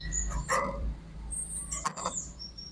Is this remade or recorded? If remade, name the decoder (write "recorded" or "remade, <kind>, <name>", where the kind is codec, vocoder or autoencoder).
remade, vocoder, BigVGAN v2